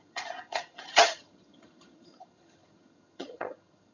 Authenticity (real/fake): fake